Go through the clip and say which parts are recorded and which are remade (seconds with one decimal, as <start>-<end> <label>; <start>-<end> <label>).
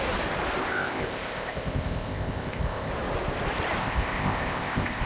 0.0-0.6 recorded; 0.6-2.9 remade; 2.9-3.8 recorded; 3.8-5.1 remade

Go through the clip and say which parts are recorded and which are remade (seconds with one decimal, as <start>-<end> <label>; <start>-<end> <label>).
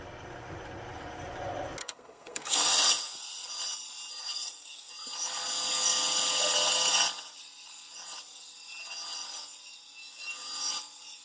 0.0-1.8 recorded; 1.8-3.5 remade; 3.5-4.2 recorded; 4.2-4.9 remade; 4.9-11.2 recorded